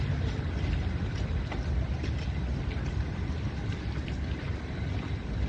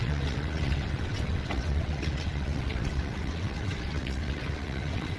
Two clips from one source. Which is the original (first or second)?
first